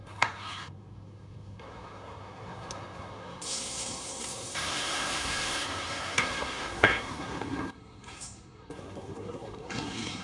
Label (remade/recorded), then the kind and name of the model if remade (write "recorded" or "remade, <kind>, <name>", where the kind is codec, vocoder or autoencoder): remade, codec, SNAC